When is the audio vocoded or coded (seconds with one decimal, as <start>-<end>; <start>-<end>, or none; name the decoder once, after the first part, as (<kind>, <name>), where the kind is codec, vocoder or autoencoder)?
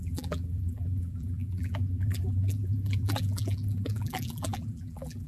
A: 0.0-5.3 (vocoder, BigVGAN v2)